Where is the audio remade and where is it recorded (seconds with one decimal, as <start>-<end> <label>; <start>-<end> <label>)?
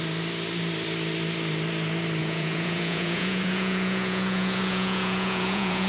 0.0-2.2 recorded; 2.2-5.9 remade